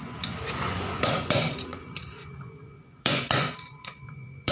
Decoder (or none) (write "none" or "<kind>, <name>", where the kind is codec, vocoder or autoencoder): vocoder, Vocos